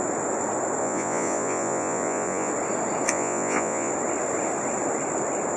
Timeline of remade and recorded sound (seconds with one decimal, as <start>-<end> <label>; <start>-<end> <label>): 0.0-0.8 recorded; 0.8-2.5 remade; 2.5-3.1 recorded; 3.1-3.9 remade; 3.9-5.6 recorded